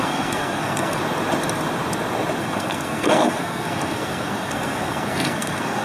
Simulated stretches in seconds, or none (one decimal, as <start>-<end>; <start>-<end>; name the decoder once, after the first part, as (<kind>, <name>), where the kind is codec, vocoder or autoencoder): 0.0-1.0 (codec, SNAC); 2.4-5.8